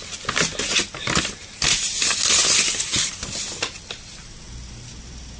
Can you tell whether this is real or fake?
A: real